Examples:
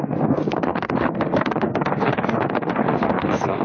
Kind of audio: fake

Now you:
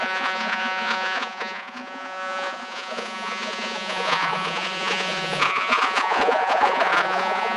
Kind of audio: fake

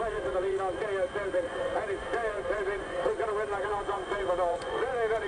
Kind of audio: fake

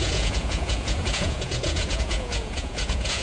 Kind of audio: fake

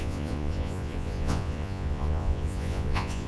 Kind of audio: fake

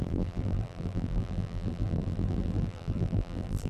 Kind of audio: fake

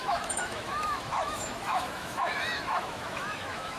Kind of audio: fake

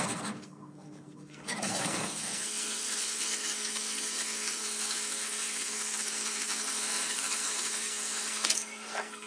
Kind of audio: fake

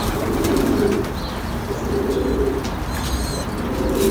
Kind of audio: real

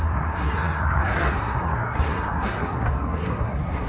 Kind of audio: fake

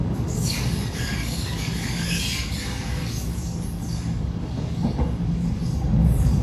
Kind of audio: fake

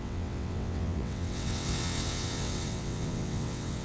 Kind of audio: fake